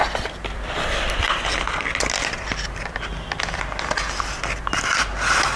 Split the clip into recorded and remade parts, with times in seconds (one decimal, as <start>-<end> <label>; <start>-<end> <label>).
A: 0.0-3.4 remade; 3.4-5.6 recorded